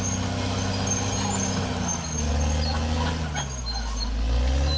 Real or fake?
real